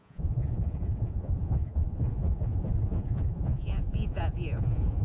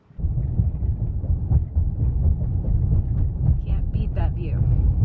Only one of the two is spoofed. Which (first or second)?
first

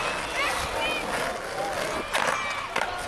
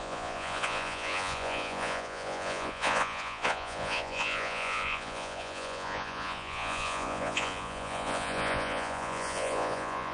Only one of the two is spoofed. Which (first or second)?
second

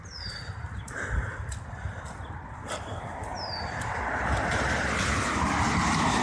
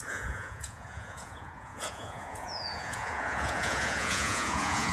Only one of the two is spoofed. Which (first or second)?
second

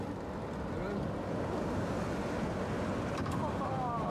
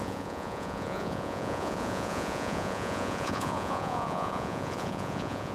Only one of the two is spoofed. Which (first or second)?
second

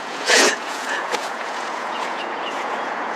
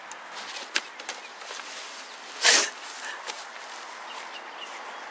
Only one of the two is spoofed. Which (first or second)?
first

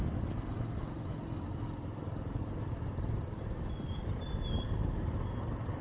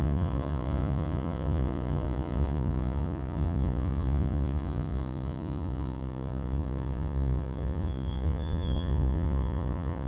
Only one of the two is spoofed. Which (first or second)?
second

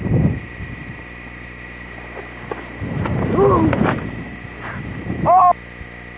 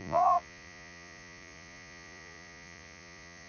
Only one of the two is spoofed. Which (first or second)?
second